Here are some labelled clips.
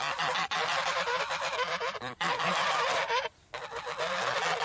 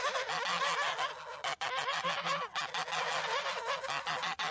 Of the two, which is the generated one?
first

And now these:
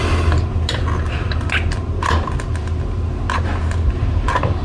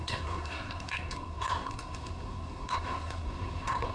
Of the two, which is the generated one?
second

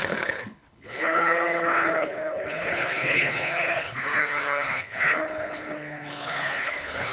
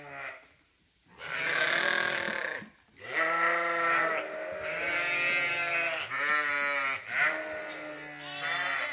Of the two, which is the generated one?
first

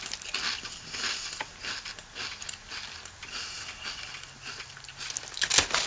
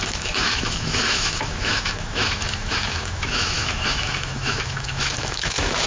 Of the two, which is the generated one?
second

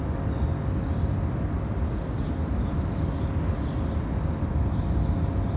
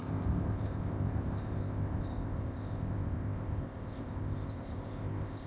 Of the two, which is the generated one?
second